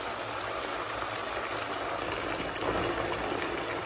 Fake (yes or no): no